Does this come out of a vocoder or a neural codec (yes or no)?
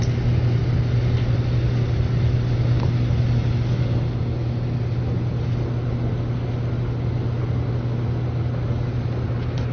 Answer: no